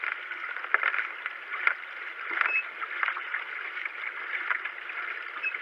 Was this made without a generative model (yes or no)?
yes